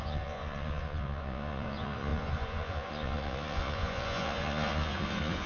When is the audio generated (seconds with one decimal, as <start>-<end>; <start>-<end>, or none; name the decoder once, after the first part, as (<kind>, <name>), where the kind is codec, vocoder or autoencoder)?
0.0-5.5 (vocoder, Vocos)